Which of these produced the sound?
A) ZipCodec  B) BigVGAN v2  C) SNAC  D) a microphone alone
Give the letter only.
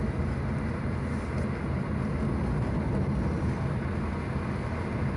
D